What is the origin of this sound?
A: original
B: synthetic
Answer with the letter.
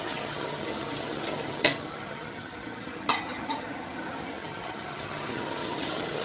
B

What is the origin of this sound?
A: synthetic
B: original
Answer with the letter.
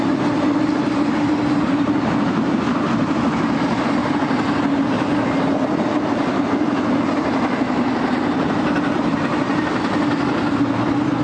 B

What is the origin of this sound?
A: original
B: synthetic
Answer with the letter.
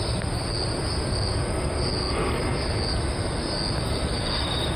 A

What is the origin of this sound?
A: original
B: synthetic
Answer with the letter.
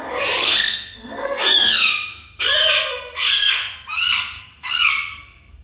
B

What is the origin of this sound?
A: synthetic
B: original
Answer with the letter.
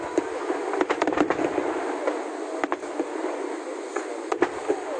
B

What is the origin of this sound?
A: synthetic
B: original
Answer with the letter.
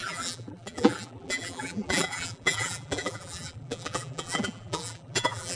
A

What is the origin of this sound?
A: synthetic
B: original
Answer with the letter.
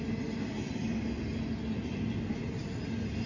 B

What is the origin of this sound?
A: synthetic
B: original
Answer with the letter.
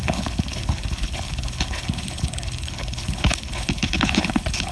A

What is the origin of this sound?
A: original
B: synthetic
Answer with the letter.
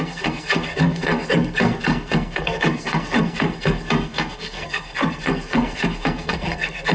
B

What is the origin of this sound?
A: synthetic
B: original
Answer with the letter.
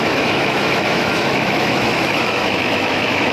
A